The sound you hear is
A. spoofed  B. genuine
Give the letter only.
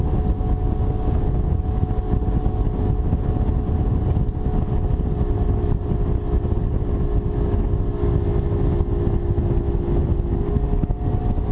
B